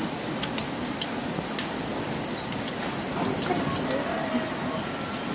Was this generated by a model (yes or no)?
no